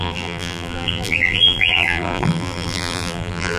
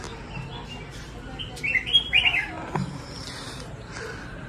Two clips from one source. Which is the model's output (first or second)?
first